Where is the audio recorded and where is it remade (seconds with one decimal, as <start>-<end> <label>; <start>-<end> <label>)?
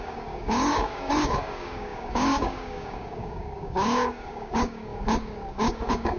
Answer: 0.0-6.2 remade